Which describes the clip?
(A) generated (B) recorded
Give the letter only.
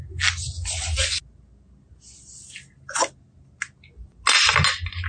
B